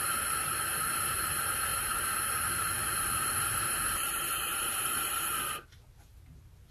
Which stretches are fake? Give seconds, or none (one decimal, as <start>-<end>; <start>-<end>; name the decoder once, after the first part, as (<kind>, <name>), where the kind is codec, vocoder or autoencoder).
1.7-5.2 (vocoder, BigVGAN v2)